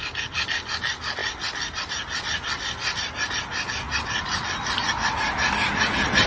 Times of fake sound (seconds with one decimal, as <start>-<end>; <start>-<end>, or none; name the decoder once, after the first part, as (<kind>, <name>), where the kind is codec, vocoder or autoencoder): none